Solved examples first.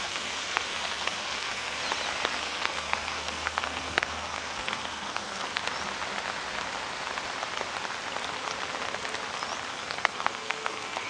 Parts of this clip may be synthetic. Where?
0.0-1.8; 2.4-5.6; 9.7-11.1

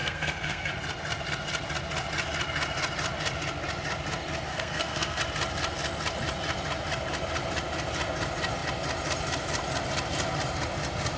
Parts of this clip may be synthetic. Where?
0.0-0.7; 4.5-5.2

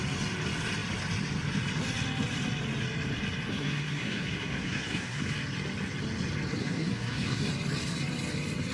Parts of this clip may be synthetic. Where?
3.5-5.3; 6.6-7.5